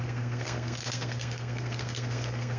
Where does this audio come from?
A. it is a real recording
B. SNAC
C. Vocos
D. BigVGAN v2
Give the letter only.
B